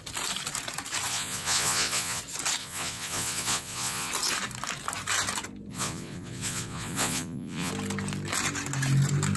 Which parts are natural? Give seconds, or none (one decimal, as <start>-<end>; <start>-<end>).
0.0-1.1; 2.2-2.6; 4.1-5.7; 7.7-9.4